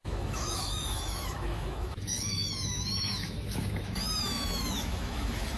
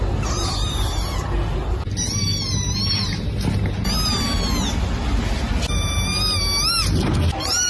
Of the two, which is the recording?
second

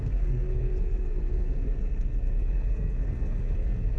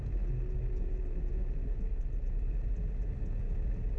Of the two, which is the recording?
second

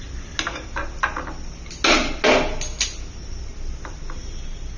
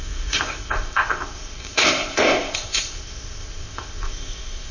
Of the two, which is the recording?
first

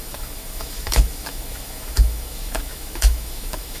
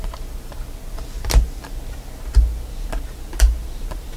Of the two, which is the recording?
second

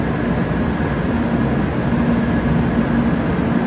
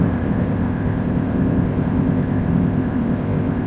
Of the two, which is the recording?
first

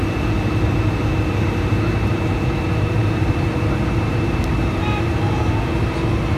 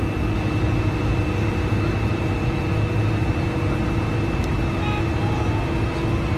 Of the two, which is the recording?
second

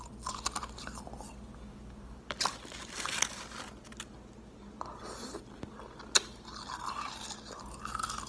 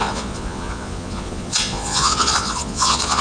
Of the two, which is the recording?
first